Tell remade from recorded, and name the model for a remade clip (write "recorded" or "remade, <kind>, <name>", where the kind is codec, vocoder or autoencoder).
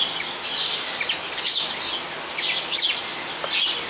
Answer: recorded